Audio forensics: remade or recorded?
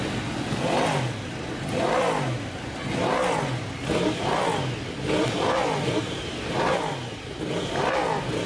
recorded